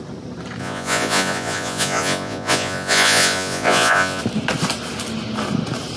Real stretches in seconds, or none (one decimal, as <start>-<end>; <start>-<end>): 0.0-0.6; 4.2-6.0